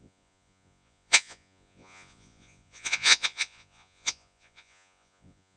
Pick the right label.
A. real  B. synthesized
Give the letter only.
B